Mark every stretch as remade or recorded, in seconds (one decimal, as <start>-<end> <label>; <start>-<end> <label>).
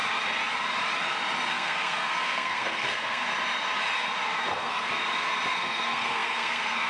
0.0-1.5 recorded; 1.5-3.3 remade; 3.3-4.5 recorded; 4.5-4.9 remade; 4.9-5.5 recorded; 5.5-6.9 remade